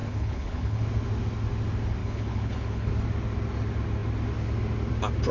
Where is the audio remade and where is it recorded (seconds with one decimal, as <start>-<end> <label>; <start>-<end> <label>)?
0.0-0.8 remade; 0.8-2.0 recorded; 2.0-2.9 remade; 2.9-5.3 recorded